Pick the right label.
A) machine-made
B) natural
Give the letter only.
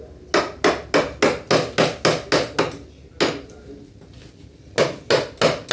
B